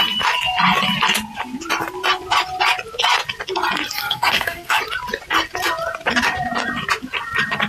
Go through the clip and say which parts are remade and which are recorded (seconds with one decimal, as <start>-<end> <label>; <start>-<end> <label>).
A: 0.0-4.0 recorded; 4.0-4.8 remade; 4.8-7.7 recorded